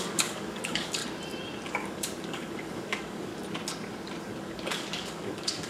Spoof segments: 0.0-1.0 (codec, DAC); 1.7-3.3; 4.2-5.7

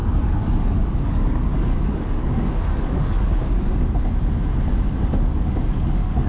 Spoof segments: 0.0-3.8 (codec, DAC); 5.3-6.3